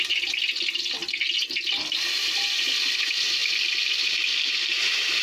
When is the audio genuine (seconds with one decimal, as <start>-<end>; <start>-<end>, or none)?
0.0-5.2